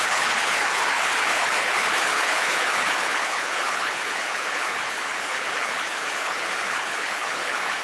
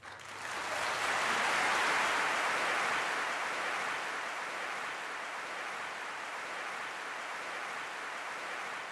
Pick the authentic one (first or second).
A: second